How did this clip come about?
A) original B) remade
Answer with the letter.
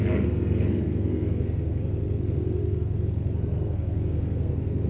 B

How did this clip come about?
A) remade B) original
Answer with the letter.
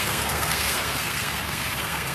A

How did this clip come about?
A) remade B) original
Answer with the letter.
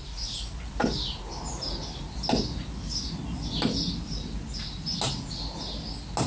B